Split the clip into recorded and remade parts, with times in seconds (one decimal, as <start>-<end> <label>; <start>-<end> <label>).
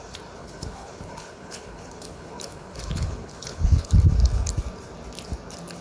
0.0-0.4 recorded; 0.4-3.9 remade; 3.9-5.8 recorded